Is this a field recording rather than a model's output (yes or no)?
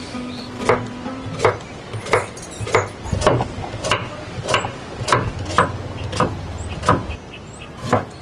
yes